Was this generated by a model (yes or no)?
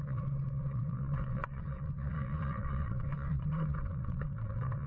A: yes